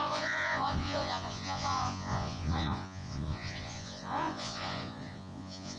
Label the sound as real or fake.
fake